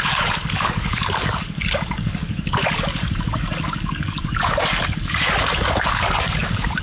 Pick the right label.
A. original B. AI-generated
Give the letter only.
B